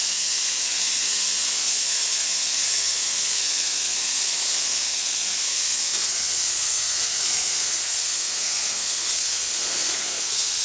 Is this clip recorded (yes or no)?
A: no